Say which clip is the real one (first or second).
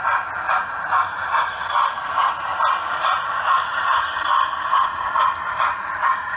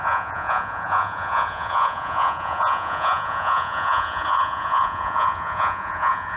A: first